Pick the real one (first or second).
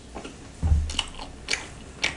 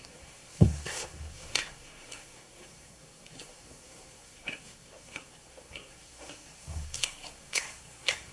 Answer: first